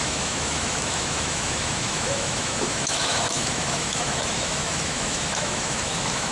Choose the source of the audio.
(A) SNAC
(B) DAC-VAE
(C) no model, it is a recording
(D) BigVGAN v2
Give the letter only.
B